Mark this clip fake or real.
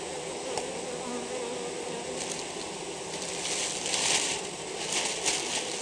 real